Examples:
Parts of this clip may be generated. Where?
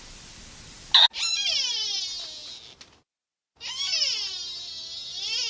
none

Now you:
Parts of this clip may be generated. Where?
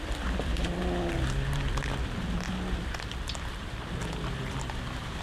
0.0-0.8 (vocoder, BigVGAN v2); 3.9-5.2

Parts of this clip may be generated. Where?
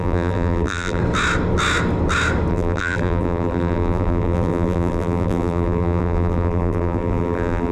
0.0-1.0 (vocoder, BigVGAN v2); 2.5-7.7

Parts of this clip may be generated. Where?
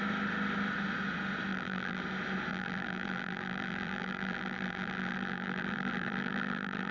1.5-2.0 (vocoder, BigVGAN v2); 2.5-6.9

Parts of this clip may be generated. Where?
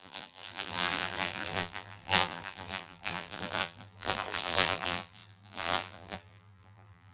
0.0-7.1 (vocoder, BigVGAN v2)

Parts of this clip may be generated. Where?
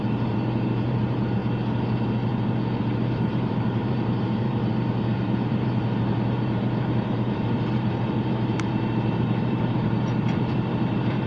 0.0-1.4 (vocoder, BigVGAN v2); 2.8-11.3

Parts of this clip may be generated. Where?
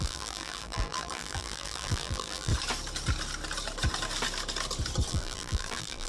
0.0-2.5 (vocoder, BigVGAN v2); 5.1-6.1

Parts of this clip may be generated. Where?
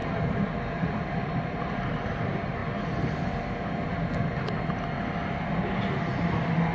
0.0-2.6 (vocoder, BigVGAN v2)